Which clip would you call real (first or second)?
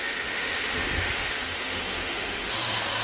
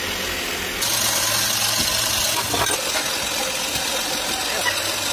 second